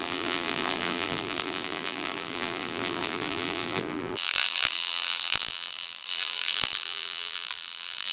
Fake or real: fake